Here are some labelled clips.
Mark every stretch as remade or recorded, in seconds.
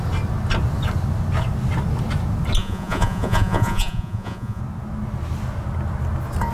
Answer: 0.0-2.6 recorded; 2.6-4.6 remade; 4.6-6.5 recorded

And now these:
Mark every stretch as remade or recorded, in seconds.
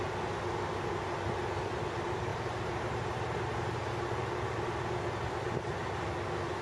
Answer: 0.0-2.3 recorded; 2.3-4.8 remade; 4.8-6.6 recorded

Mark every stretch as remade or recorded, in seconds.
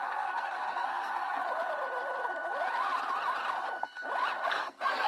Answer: 0.0-1.4 remade; 1.4-4.5 recorded; 4.5-5.1 remade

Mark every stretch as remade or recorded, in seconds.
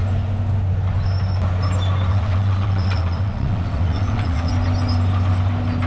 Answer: 0.0-2.1 recorded; 2.1-4.5 remade; 4.5-5.9 recorded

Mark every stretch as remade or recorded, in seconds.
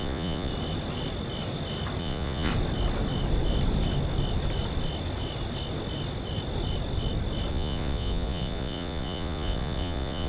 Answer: 0.0-0.5 remade; 0.5-2.0 recorded; 2.0-2.5 remade; 2.5-7.5 recorded; 7.5-10.3 remade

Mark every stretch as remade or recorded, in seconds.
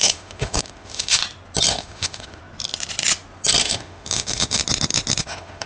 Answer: 0.0-1.2 remade; 1.2-1.7 recorded; 1.7-2.4 remade; 2.4-3.6 recorded; 3.6-4.6 remade; 4.6-5.2 recorded; 5.2-5.7 remade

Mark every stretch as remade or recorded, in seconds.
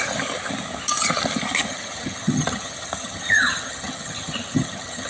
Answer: 0.0-1.7 recorded; 1.7-5.1 remade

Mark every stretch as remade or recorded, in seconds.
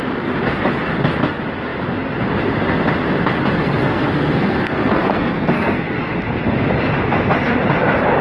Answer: 0.0-3.6 recorded; 3.6-6.0 remade; 6.0-8.2 recorded